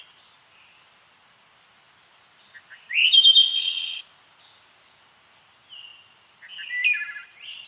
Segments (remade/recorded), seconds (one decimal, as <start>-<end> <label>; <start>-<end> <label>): 0.0-3.4 recorded; 3.4-4.0 remade; 4.0-7.7 recorded